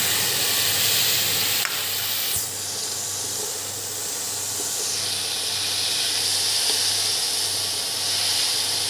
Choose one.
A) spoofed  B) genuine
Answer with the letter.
B